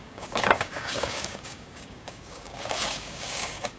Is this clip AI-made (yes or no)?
yes